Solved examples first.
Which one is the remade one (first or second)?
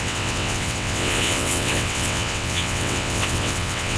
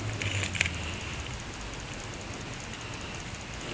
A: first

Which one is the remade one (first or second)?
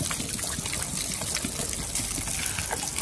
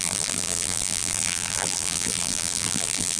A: second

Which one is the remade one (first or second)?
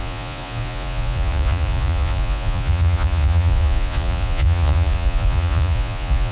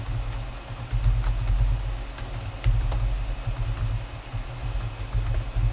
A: first